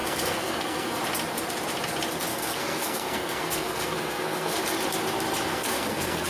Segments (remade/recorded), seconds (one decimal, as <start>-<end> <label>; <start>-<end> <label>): 0.0-1.0 remade; 1.0-2.3 recorded; 2.3-4.6 remade; 4.6-5.5 recorded; 5.5-6.3 remade